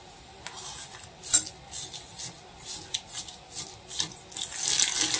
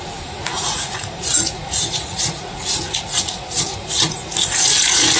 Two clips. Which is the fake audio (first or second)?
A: second